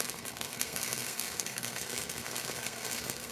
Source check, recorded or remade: remade